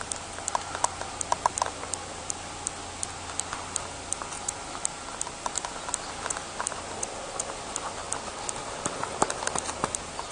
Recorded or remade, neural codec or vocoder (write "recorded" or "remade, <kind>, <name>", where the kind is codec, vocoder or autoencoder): recorded